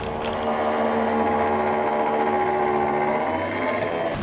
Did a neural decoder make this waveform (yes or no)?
no